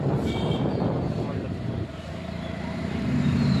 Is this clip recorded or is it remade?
remade